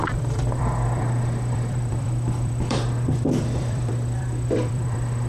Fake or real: fake